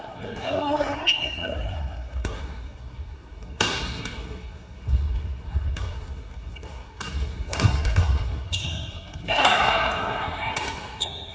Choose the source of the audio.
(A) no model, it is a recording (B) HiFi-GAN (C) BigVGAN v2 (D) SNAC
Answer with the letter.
D